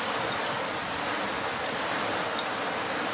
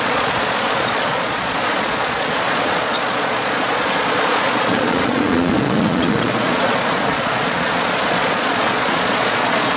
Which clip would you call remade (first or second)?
second